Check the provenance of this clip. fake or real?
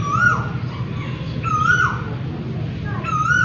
real